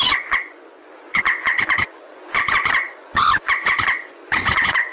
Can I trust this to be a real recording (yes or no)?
no